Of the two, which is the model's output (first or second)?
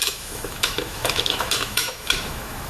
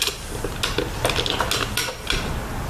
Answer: first